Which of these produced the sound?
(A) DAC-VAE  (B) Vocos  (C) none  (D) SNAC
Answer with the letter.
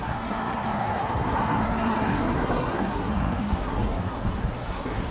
D